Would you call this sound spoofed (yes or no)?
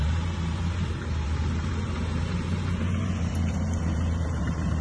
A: yes